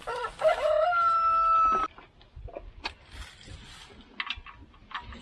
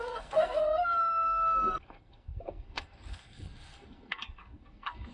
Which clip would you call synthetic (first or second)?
second